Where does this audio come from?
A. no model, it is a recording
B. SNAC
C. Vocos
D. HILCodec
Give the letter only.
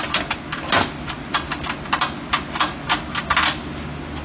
A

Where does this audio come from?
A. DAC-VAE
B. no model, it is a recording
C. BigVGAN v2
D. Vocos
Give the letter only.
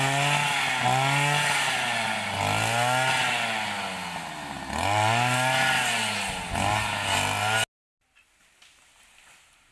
B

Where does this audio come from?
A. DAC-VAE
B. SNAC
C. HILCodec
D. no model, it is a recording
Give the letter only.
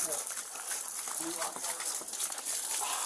D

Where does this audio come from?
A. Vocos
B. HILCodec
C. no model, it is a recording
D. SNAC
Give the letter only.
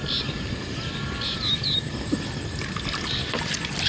C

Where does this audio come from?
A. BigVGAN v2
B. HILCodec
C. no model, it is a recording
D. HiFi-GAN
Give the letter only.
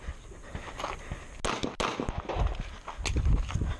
C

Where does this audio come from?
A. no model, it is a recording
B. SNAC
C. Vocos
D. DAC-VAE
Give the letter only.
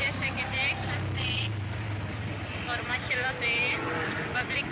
A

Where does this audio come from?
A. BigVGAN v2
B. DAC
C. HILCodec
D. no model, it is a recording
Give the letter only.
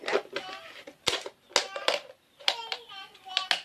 D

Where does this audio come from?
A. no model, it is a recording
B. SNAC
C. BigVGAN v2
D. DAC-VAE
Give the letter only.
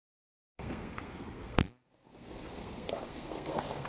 B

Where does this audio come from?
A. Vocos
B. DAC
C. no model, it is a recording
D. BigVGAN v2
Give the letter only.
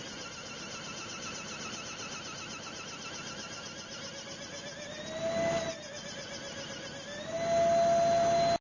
C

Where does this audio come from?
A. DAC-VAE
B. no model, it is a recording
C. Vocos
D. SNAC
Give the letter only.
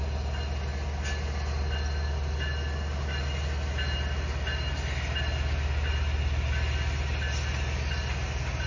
B